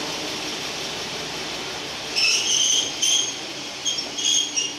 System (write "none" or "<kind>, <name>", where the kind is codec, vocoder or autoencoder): none